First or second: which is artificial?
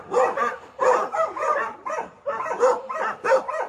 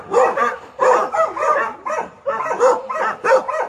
first